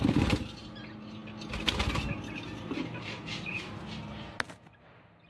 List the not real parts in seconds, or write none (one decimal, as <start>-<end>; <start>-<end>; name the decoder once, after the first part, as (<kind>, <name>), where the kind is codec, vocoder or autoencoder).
none